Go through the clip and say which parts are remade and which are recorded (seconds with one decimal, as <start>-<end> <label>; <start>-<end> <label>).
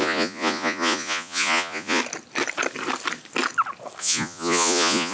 0.0-2.0 remade; 2.0-4.0 recorded; 4.0-5.1 remade